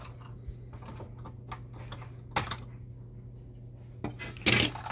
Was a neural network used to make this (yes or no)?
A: no